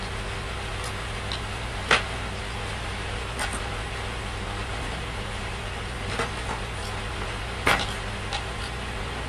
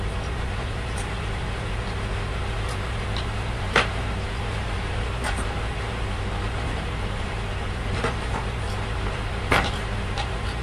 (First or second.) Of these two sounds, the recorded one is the first